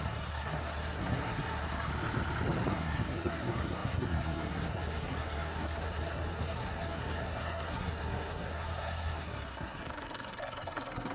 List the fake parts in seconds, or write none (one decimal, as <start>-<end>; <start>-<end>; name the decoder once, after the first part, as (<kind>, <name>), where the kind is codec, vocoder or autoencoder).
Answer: 0.0-1.9 (codec, SNAC); 2.7-11.1